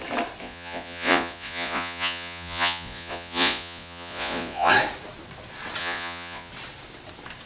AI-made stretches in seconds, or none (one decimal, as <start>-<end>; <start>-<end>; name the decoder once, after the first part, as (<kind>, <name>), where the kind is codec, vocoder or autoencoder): 0.4-4.7 (vocoder, Vocos); 5.8-6.5